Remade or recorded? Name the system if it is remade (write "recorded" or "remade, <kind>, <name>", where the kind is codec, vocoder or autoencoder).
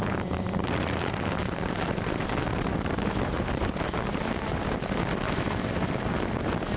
remade, vocoder, BigVGAN v2